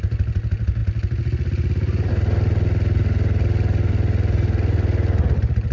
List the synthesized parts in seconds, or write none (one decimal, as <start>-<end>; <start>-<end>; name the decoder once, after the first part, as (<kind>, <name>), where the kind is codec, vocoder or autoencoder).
none